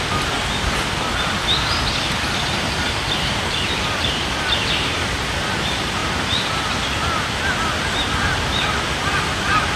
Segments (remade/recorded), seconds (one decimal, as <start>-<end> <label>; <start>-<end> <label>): 0.0-9.8 recorded